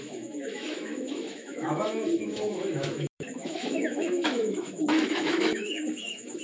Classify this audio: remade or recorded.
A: remade